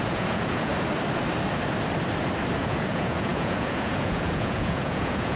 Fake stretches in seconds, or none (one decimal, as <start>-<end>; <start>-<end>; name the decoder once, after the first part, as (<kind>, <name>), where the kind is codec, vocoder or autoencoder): 0.0-0.7 (vocoder, Vocos); 2.6-5.4